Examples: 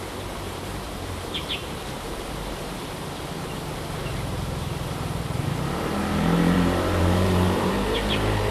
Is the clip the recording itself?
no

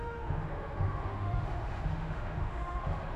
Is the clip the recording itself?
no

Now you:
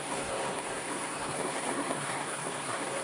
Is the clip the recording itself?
no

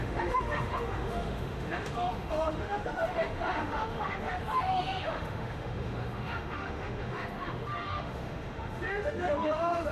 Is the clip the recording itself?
no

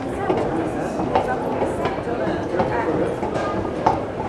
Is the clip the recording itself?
yes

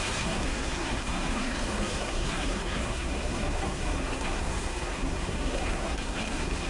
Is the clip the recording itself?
no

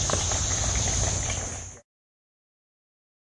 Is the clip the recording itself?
yes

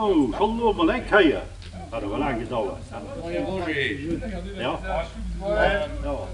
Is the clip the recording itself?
yes